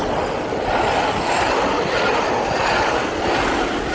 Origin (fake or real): real